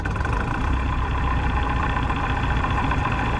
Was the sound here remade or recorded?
remade